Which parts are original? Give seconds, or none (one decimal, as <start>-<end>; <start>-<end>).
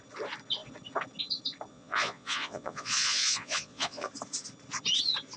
0.0-1.7; 4.1-5.4